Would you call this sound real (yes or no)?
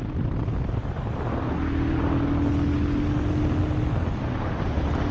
yes